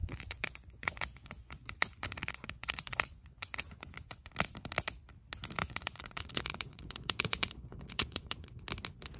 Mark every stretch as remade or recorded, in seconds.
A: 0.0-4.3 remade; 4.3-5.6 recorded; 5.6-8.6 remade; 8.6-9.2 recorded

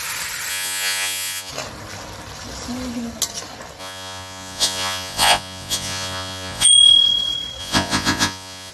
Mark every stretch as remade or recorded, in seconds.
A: 0.0-0.5 recorded; 0.5-1.5 remade; 1.5-3.8 recorded; 3.8-6.7 remade; 6.7-7.6 recorded; 7.6-8.7 remade